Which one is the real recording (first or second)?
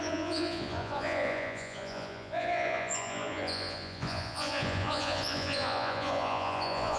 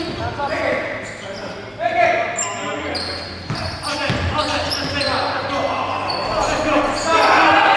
second